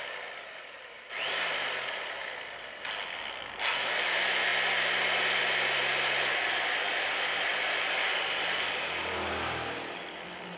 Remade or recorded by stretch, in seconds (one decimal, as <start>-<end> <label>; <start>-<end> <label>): 0.0-10.6 recorded